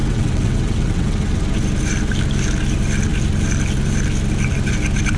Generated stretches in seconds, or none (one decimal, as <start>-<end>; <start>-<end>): 0.0-1.4